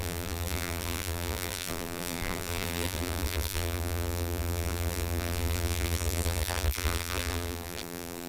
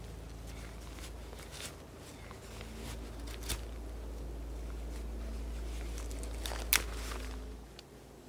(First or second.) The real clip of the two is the second